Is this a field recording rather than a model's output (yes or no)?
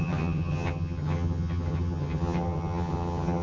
no